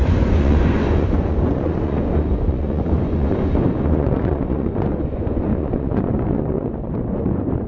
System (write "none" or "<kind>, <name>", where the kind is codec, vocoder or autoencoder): vocoder, Vocos